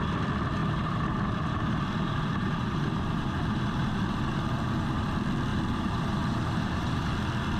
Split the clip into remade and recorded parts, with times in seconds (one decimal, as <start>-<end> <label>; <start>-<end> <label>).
0.0-0.6 recorded; 0.6-5.1 remade; 5.1-5.5 recorded; 5.5-7.1 remade; 7.1-7.6 recorded